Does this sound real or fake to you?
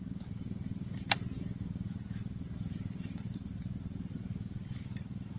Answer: fake